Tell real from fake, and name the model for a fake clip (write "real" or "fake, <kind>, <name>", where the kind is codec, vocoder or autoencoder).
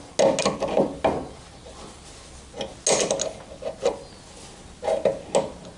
real